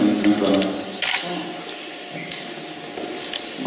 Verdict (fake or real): real